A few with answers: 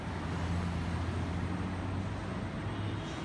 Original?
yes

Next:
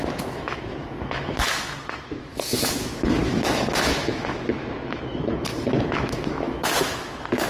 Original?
no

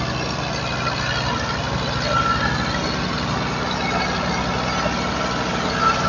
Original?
yes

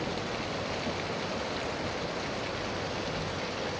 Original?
yes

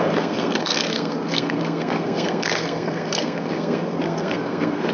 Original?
no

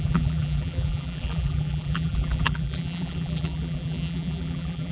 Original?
no